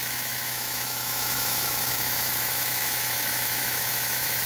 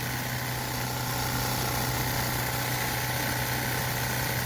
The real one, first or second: second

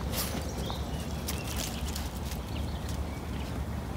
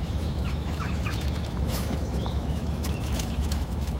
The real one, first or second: first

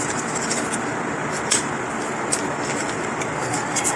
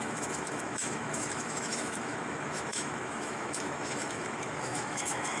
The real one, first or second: first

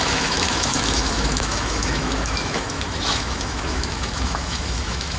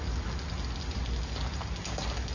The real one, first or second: second